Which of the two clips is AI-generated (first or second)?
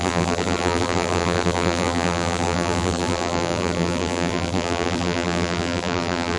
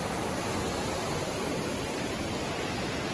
first